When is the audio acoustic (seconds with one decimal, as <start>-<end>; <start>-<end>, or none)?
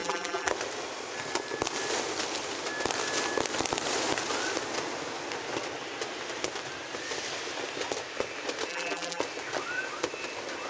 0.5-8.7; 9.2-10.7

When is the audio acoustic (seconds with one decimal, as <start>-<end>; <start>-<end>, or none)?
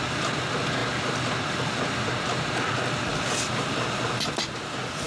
0.0-5.1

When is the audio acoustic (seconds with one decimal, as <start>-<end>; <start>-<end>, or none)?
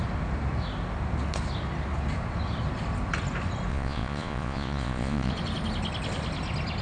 0.0-3.7; 5.3-6.8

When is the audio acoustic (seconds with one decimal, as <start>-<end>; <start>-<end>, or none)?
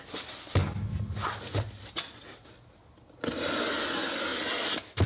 0.0-5.1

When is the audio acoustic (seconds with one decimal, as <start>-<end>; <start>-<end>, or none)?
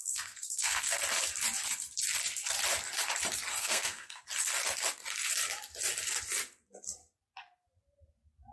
1.0-3.5; 4.2-8.5